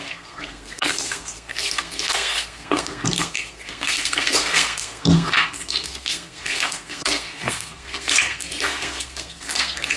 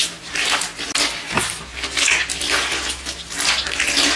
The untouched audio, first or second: second